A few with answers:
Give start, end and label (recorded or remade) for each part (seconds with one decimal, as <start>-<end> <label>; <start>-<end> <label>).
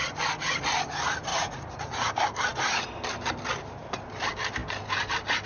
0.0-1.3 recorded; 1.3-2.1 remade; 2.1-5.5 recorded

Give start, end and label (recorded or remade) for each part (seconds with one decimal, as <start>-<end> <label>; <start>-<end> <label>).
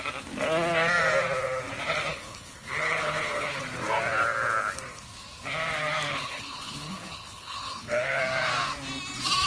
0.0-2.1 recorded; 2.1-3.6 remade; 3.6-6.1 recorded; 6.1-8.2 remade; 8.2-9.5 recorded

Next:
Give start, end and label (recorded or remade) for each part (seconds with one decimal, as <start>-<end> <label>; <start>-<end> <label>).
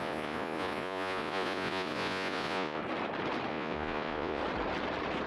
0.0-2.8 remade; 2.8-3.5 recorded; 3.5-4.4 remade; 4.4-5.3 recorded